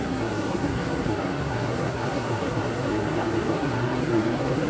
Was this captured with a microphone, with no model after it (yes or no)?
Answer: no